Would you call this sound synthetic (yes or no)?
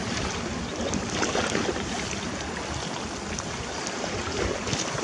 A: no